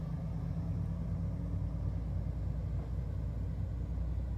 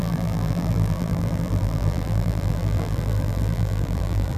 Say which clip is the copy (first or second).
second